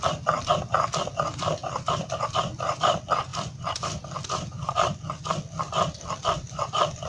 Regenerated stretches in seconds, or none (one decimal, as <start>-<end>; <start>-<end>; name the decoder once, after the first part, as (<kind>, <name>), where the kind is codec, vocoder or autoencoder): none